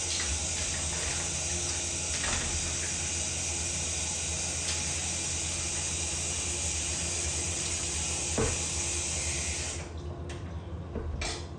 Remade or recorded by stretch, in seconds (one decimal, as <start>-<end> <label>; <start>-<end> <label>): 0.0-7.4 recorded; 7.4-7.9 remade; 7.9-11.6 recorded